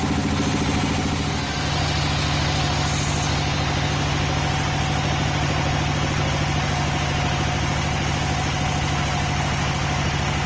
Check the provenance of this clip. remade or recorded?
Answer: recorded